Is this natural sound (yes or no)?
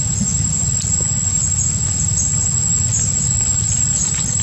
yes